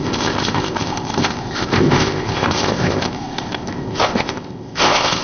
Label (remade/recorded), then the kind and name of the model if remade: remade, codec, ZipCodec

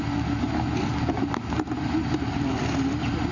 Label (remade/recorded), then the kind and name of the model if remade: recorded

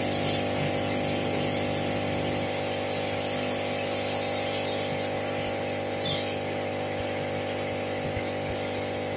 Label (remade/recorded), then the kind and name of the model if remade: recorded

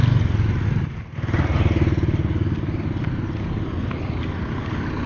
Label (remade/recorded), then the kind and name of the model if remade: recorded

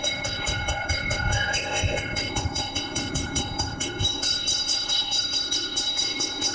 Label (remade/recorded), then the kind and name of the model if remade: remade, codec, ZipCodec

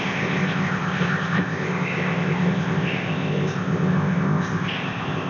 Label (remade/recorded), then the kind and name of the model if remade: remade, codec, ZipCodec